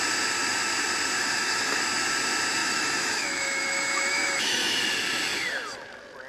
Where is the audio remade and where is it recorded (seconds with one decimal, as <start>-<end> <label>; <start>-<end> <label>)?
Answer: 0.0-1.2 recorded; 1.2-1.8 remade; 1.8-2.6 recorded; 2.6-4.8 remade; 4.8-6.3 recorded